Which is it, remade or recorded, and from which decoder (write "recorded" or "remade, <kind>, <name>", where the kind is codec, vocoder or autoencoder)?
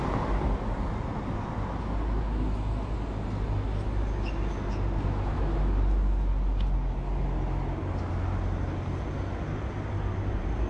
recorded